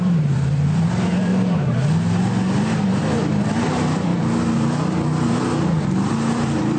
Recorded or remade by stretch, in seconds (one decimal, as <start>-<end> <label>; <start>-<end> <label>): 0.0-1.3 remade; 1.3-3.0 recorded; 3.0-4.1 remade; 4.1-6.1 recorded; 6.1-6.8 remade